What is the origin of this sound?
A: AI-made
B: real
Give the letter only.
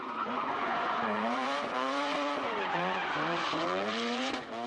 A